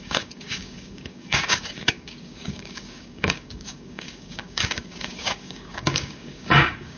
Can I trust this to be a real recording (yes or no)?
no